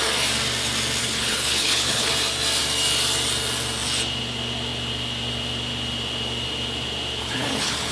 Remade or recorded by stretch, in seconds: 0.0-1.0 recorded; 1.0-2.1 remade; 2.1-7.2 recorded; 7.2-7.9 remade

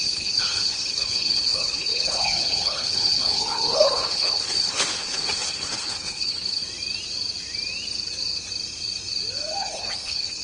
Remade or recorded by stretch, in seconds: 0.0-6.6 remade; 6.6-9.6 recorded; 9.6-10.4 remade

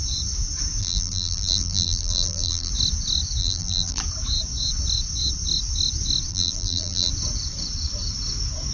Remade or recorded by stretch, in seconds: 0.0-0.8 recorded; 0.8-2.7 remade; 2.7-3.4 recorded; 3.4-4.0 remade; 4.0-6.3 recorded; 6.3-7.1 remade; 7.1-8.7 recorded

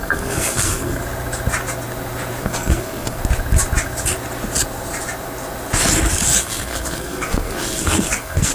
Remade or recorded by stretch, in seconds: 0.0-1.0 remade; 1.0-2.4 recorded; 2.4-3.2 remade; 3.2-6.4 recorded; 6.4-8.5 remade

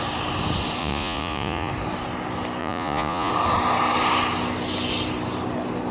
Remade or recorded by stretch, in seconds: 0.0-0.8 recorded; 0.8-1.7 remade; 1.7-2.6 recorded; 2.6-3.3 remade; 3.3-5.9 recorded